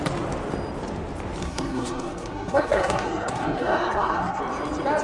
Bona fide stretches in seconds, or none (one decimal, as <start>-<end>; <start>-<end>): 0.0-1.4; 4.4-5.0